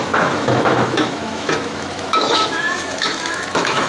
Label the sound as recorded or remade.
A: remade